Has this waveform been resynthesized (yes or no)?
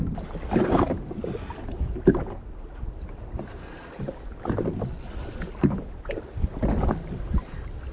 no